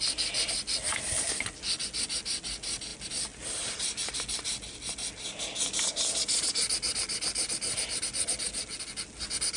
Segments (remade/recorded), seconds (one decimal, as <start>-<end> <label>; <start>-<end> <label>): 0.0-9.6 recorded